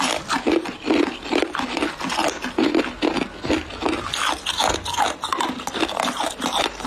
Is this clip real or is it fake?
real